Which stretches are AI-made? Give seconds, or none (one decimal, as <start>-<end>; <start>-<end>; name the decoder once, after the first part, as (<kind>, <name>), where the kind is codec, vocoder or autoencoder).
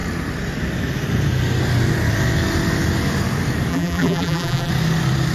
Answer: 3.7-4.7 (vocoder, BigVGAN v2)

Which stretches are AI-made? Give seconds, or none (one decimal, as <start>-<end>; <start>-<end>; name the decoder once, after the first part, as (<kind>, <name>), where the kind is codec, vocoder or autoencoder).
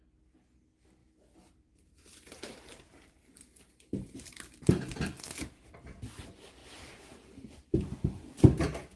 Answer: 1.0-5.0 (vocoder, BigVGAN v2); 6.6-8.4